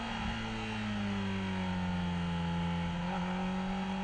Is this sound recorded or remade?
recorded